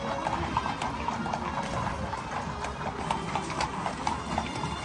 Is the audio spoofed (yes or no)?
no